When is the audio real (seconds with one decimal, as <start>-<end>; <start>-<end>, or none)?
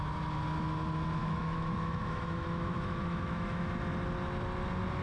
0.0-1.2; 3.7-5.0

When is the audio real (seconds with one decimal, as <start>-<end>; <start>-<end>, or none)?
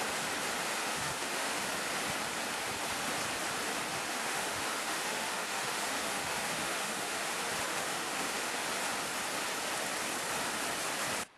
0.0-0.8; 1.7-3.9; 7.3-7.7; 8.6-11.4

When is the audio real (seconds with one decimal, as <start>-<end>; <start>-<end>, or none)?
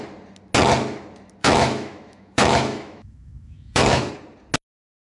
0.0-1.4; 4.1-5.0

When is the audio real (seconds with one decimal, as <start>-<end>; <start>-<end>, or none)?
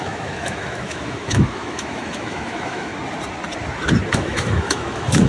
2.9-4.1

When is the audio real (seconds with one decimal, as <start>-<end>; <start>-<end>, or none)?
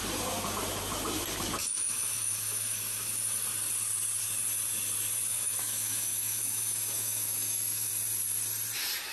0.0-1.6; 3.2-5.3; 7.9-9.1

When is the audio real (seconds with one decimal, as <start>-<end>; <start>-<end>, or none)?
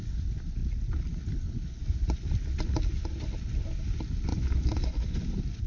0.0-4.3; 4.8-5.7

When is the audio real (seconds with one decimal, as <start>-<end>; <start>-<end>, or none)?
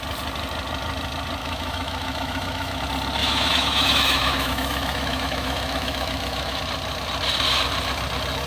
0.0-1.4; 2.8-3.2; 6.6-8.5